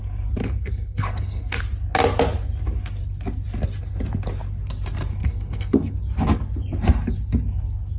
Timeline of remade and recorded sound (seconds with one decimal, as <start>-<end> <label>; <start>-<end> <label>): 0.0-0.4 recorded; 0.4-1.6 remade; 1.6-5.2 recorded; 5.2-6.0 remade; 6.0-8.0 recorded

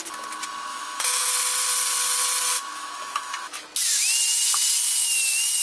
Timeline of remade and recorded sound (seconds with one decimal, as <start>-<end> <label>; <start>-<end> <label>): 0.0-0.7 recorded; 0.7-1.3 remade; 1.3-2.5 recorded; 2.5-3.6 remade; 3.6-5.6 recorded

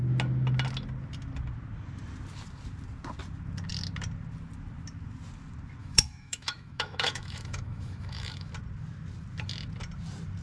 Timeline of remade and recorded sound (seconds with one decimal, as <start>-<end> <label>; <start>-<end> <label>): 0.0-5.8 recorded; 5.8-8.5 remade; 8.5-10.4 recorded

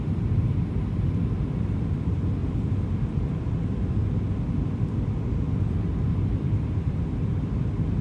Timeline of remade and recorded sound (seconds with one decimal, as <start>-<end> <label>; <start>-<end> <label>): 0.0-2.4 recorded; 2.4-7.0 remade; 7.0-8.0 recorded